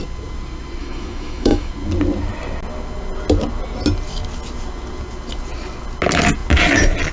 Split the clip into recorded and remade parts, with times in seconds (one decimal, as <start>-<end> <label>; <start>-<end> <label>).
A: 0.0-0.8 recorded; 0.8-1.7 remade; 1.7-7.1 recorded